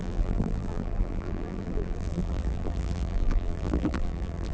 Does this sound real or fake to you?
fake